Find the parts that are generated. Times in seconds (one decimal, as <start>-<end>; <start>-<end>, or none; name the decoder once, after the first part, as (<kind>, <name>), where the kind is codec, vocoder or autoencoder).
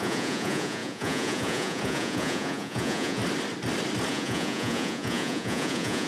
0.0-3.2 (vocoder, Vocos); 4.1-6.1